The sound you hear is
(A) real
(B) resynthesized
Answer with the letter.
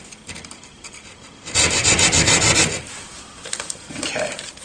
A